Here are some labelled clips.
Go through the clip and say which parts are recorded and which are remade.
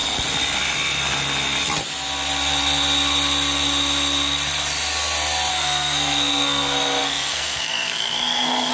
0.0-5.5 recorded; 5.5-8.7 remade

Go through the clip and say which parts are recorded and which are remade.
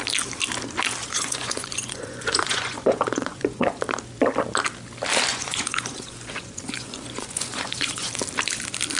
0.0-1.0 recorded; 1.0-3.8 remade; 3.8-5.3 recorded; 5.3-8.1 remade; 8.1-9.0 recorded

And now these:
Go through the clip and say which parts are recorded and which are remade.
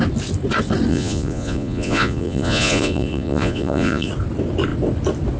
0.0-0.9 recorded; 0.9-4.1 remade; 4.1-5.4 recorded